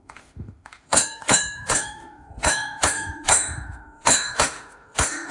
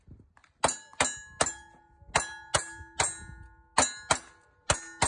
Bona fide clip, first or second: second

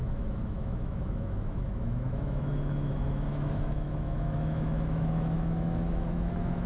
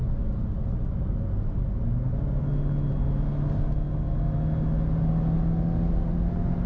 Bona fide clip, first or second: second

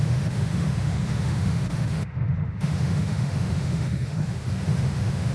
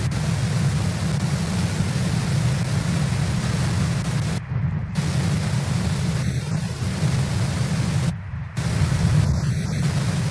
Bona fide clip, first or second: second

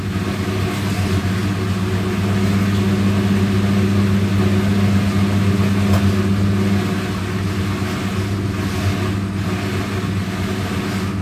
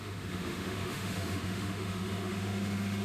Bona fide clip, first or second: first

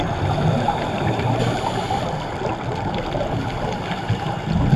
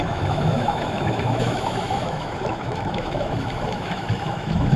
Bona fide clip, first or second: first